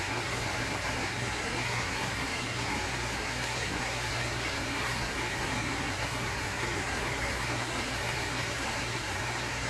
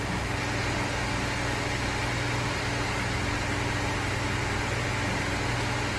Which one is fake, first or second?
first